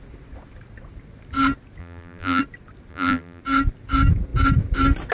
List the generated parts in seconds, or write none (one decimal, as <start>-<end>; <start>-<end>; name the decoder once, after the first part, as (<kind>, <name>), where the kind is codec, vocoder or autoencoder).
1.8-2.4 (vocoder, BigVGAN v2); 2.9-3.4